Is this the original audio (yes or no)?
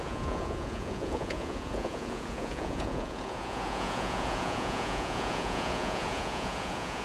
no